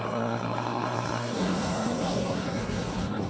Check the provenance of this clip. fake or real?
fake